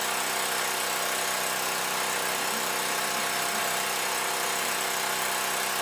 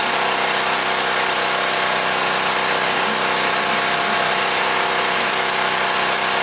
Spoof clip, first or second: second